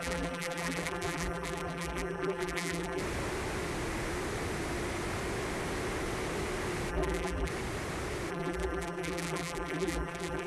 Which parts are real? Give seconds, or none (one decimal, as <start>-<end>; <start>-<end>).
3.0-6.9; 7.5-8.3